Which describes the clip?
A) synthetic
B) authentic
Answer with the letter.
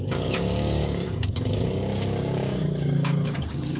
A